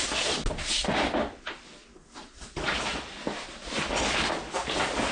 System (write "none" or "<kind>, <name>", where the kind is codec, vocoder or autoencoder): none